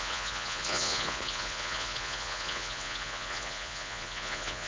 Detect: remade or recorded remade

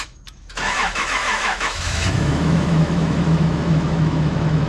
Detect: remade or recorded remade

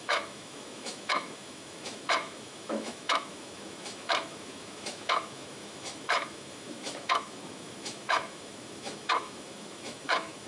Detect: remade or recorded remade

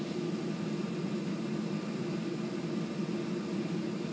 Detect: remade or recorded recorded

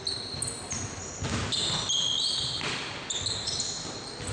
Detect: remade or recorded recorded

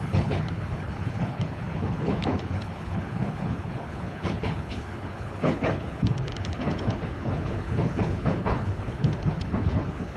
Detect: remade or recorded remade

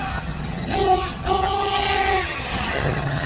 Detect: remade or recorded remade